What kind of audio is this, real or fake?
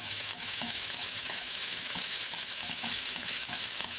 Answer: fake